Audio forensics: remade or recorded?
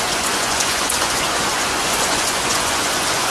remade